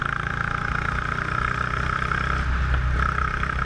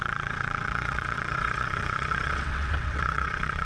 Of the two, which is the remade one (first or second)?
second